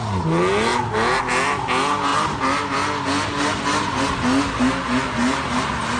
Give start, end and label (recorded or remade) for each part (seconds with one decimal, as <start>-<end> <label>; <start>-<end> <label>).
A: 0.0-6.0 recorded